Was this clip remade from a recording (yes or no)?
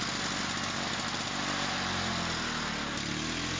no